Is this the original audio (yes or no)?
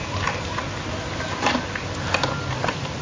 yes